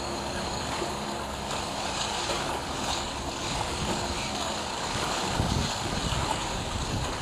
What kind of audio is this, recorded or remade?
remade